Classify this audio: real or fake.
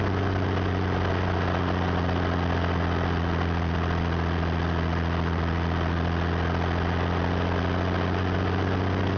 real